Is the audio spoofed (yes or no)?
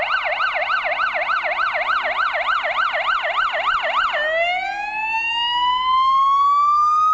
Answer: no